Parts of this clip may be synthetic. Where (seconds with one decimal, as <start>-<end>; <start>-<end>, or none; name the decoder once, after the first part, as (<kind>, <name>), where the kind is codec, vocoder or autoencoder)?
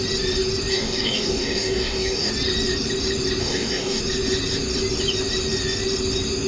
0.7-2.3 (codec, DAC); 3.4-4.0